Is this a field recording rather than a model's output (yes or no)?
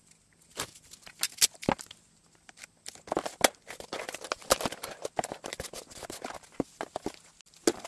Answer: yes